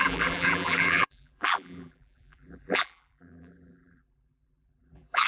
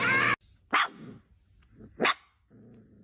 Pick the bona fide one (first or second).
second